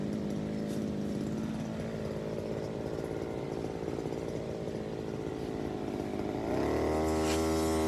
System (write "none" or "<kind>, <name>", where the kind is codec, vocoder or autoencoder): none